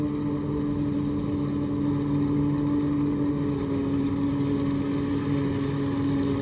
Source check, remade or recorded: recorded